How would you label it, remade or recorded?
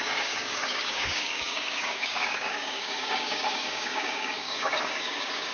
remade